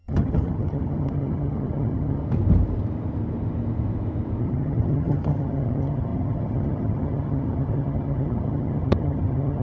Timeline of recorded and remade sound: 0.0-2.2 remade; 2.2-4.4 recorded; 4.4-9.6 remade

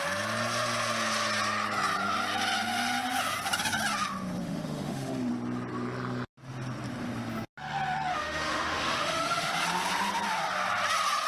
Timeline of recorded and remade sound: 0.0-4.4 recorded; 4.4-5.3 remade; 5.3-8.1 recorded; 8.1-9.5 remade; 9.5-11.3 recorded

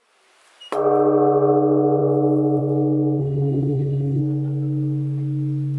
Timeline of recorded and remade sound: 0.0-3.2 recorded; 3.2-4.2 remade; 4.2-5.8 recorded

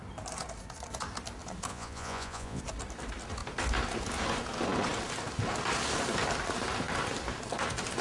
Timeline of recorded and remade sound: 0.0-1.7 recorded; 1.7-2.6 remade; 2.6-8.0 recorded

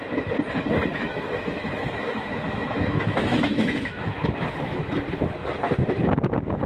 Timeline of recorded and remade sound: 0.0-0.9 recorded; 0.9-4.9 remade; 4.9-6.7 recorded

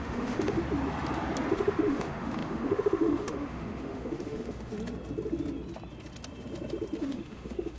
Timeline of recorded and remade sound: 0.0-0.6 remade; 0.6-1.5 recorded; 1.5-4.7 remade; 4.7-7.0 recorded; 7.0-7.8 remade